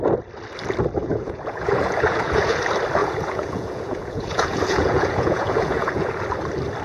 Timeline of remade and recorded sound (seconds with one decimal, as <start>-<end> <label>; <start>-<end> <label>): 0.0-1.0 recorded; 1.0-2.6 remade; 2.6-3.0 recorded; 3.0-6.2 remade; 6.2-6.8 recorded